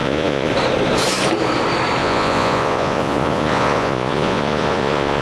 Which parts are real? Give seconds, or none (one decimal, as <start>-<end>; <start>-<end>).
0.5-2.0